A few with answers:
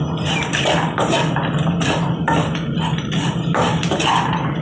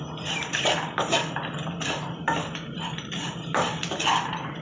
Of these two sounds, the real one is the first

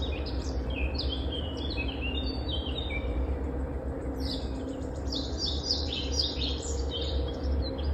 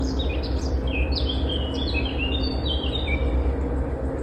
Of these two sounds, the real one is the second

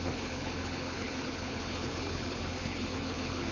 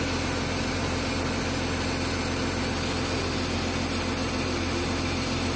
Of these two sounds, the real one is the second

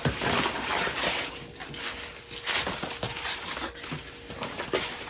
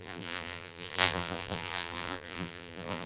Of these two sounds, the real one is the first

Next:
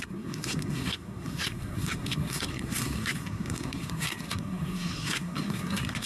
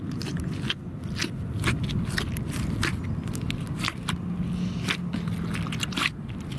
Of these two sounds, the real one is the second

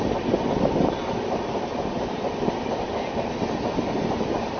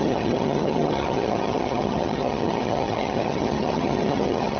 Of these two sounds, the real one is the first